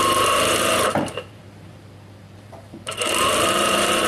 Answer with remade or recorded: remade